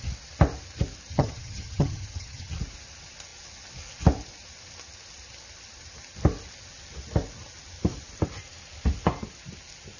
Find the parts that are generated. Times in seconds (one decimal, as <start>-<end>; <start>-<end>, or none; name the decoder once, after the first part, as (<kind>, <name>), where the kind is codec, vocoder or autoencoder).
1.1-2.5 (vocoder, HiFi-GAN)